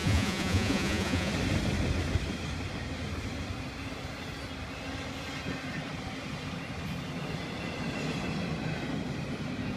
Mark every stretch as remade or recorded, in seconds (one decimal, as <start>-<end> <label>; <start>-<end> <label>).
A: 0.0-1.3 remade; 1.3-9.8 recorded